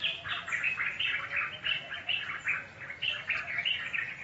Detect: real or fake real